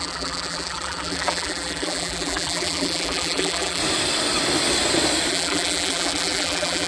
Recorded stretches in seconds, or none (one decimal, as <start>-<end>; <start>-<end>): 3.8-5.3